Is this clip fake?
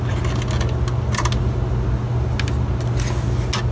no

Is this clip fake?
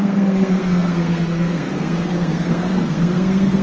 yes